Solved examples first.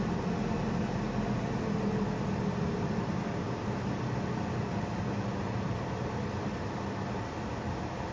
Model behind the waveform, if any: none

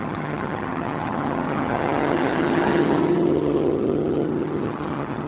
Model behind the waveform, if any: vocoder, HiFi-GAN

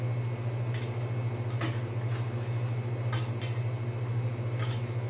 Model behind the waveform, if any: none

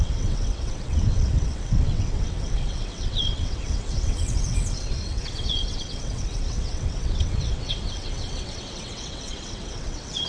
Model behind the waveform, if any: vocoder, WaveNeXt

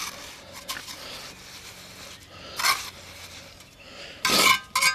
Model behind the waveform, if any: none